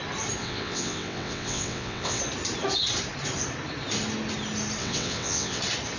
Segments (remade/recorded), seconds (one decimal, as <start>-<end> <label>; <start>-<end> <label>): 0.0-0.4 recorded; 0.4-2.2 remade; 2.2-4.8 recorded; 4.8-5.6 remade; 5.6-6.0 recorded